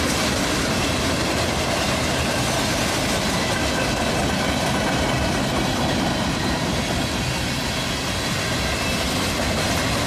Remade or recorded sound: recorded